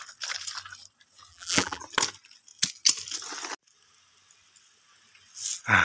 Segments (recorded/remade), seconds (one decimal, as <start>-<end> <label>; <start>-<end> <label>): 0.0-1.3 recorded; 1.3-1.8 remade; 1.8-5.8 recorded